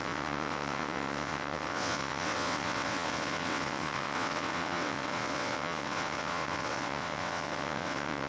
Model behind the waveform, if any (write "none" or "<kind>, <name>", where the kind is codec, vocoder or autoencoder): vocoder, WaveNeXt